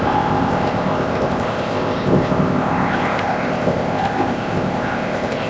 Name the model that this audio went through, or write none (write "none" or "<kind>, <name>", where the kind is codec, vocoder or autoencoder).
codec, ZipCodec